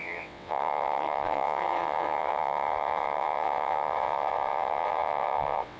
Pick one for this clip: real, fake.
fake